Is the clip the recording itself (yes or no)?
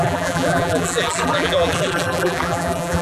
no